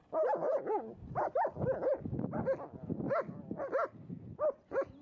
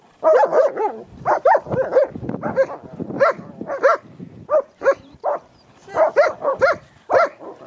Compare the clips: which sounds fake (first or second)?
second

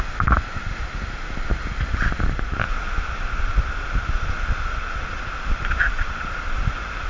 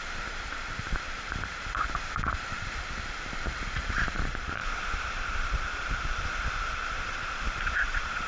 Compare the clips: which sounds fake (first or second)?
second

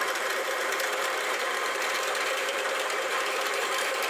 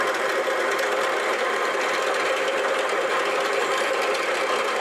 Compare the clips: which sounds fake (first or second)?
first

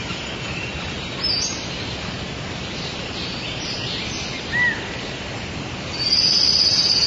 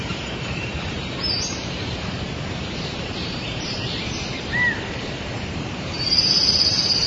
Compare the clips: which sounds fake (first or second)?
second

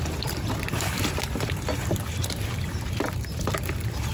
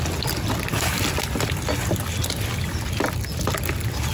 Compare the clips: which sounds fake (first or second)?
first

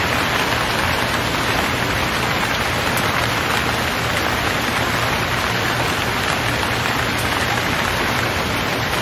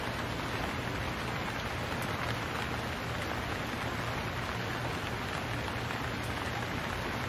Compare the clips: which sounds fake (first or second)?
first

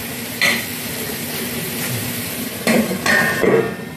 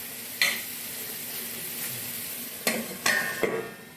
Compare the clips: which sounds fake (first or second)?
first